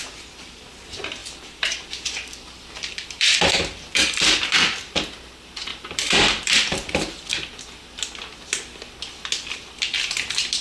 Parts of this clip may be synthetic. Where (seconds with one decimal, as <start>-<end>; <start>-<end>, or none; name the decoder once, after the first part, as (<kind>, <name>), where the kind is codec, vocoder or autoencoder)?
1.2-4.4 (vocoder, BigVGAN v2); 5.7-7.6